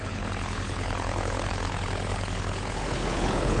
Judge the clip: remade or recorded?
remade